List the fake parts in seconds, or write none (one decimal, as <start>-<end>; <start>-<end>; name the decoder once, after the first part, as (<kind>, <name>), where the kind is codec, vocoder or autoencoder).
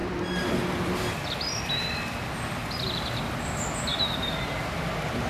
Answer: 2.6-3.3 (vocoder, BigVGAN v2); 3.9-4.6